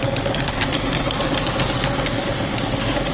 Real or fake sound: real